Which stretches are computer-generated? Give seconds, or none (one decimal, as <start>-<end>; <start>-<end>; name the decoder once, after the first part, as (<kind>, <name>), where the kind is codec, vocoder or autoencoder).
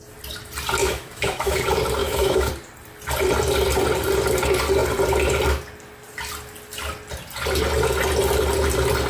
0.8-1.6 (autoencoder, DAC-VAE); 2.0-2.5